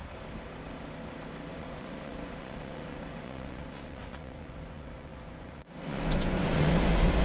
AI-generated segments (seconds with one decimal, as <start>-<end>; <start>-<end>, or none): 1.5-7.2